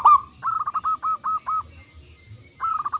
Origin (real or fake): real